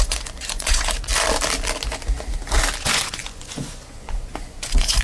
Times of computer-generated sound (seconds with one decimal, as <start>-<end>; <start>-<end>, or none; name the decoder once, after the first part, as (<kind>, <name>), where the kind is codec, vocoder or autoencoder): 0.0-1.1 (vocoder, Vocos); 2.8-5.0